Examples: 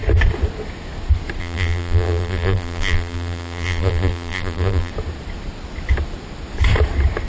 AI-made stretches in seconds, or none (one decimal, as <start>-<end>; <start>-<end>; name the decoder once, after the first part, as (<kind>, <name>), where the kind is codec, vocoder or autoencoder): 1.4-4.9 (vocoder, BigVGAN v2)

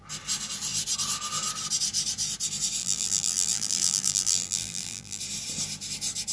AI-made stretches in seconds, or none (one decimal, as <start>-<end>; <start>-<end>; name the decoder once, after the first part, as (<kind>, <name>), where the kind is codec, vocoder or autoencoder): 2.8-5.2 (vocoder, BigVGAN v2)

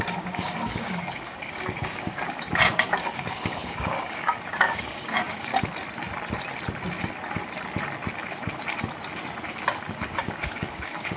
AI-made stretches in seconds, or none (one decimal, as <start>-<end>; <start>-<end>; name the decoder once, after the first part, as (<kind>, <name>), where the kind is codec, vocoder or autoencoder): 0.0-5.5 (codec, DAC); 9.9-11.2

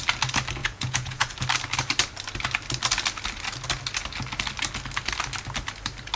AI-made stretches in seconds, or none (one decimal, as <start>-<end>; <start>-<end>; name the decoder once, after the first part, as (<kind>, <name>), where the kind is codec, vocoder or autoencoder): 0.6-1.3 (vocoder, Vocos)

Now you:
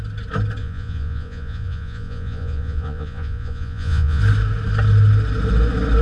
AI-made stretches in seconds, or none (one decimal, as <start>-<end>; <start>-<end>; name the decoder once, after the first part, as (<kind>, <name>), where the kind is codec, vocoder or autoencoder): 0.6-4.2 (vocoder, Vocos)

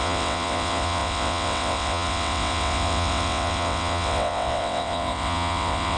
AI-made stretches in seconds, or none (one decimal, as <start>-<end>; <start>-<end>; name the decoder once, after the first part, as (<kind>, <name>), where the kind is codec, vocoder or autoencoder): 0.0-6.0 (vocoder, WaveNeXt)

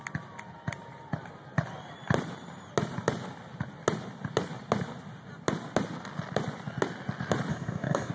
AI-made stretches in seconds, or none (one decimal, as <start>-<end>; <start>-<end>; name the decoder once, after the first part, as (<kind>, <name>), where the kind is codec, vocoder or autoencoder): 7.5-8.1 (codec, DAC)

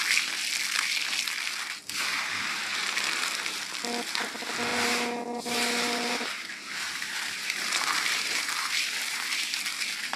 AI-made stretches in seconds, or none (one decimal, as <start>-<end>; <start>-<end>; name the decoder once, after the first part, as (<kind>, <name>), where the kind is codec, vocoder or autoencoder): 4.7-9.6 (vocoder, BigVGAN v2)